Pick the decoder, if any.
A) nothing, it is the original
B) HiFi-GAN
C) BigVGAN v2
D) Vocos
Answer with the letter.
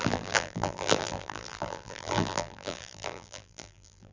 C